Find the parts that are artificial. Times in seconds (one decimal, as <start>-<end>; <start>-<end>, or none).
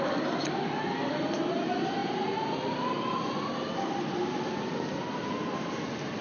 none